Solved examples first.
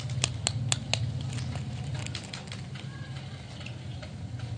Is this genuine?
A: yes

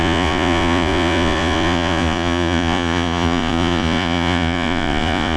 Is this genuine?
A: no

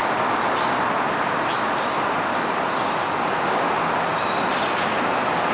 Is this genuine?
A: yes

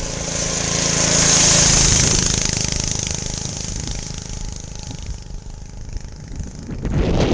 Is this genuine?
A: yes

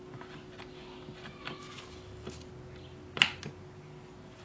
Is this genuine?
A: yes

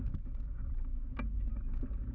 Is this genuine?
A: yes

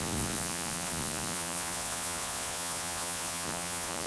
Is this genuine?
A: no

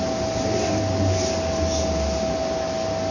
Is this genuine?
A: yes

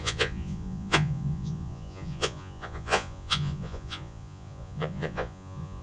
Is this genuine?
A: no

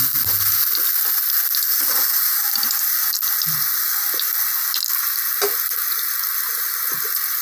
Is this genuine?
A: yes